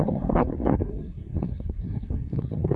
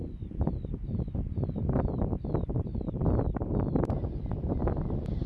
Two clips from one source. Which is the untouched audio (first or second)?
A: second